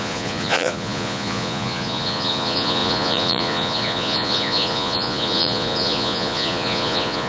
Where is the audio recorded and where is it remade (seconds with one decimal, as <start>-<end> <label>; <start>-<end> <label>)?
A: 0.0-7.3 remade